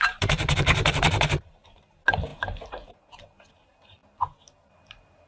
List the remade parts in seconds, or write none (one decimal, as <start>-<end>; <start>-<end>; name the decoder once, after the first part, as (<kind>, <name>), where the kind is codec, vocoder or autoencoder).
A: 0.0-4.0 (vocoder, BigVGAN v2); 4.7-5.3